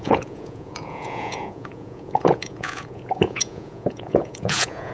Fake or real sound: fake